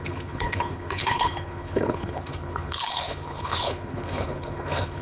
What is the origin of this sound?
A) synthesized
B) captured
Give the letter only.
A